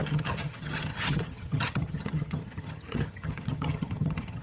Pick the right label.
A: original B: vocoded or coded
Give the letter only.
B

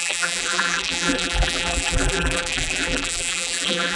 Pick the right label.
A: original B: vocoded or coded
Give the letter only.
B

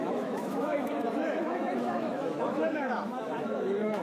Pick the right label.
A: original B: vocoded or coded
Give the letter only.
B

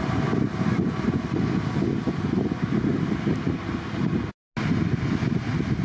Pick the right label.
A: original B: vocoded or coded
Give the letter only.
A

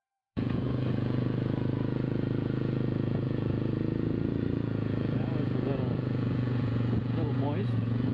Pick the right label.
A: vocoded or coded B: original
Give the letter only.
A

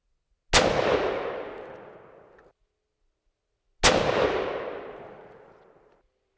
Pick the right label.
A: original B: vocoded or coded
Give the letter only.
A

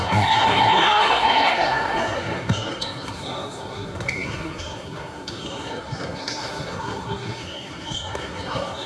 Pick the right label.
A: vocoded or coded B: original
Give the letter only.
A